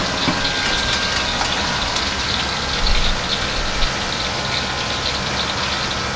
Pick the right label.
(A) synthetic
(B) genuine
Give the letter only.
B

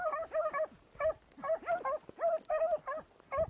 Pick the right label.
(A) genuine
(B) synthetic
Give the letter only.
A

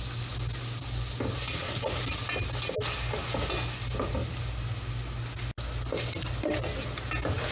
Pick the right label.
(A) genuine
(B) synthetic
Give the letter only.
A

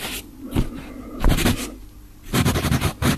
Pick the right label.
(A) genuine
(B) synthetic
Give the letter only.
A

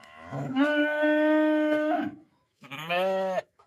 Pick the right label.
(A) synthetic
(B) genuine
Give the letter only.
A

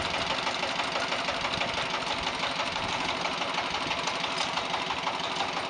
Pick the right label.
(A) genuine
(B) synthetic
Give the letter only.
A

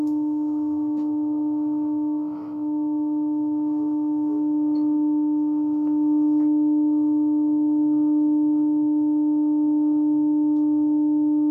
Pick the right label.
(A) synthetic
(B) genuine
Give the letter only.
A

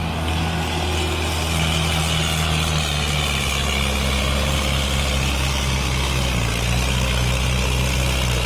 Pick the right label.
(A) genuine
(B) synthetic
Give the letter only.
A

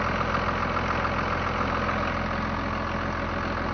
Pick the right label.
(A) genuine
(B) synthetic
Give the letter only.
A